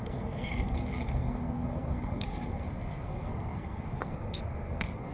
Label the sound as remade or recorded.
remade